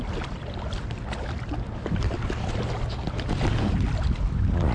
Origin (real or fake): real